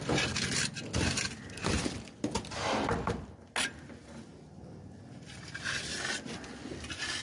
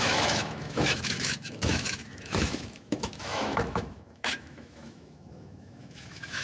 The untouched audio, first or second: first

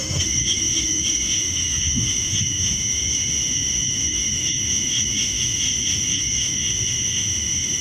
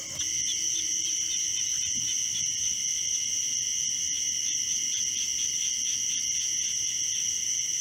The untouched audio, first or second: second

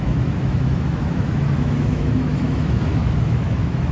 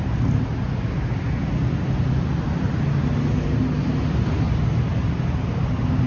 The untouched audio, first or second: second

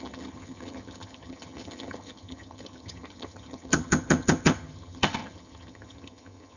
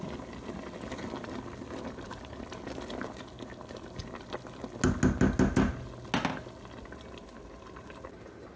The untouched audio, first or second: second